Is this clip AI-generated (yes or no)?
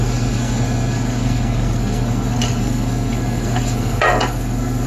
yes